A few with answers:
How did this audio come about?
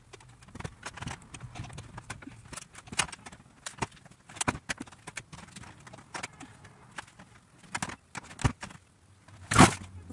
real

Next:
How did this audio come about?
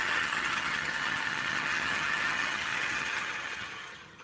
fake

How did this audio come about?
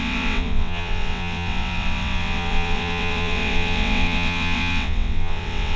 fake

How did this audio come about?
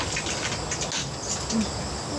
real